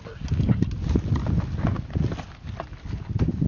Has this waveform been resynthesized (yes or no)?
no